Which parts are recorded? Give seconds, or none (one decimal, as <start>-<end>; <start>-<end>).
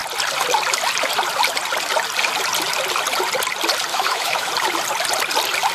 0.0-3.9; 4.5-5.7